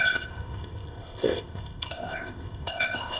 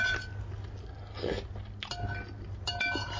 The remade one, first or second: first